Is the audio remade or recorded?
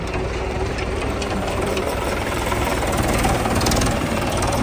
remade